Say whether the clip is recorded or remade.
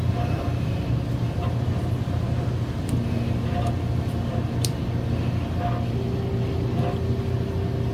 recorded